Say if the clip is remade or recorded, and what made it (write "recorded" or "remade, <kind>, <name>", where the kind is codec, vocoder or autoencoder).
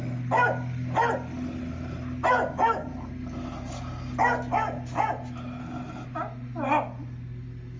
recorded